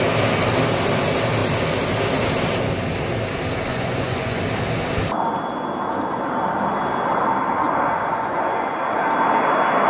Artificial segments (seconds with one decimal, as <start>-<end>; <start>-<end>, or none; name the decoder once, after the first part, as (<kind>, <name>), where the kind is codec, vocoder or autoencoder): 3.7-4.4 (vocoder, Vocos); 7.6-9.0